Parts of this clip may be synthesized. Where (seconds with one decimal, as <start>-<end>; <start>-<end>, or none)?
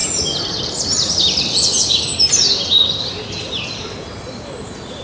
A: none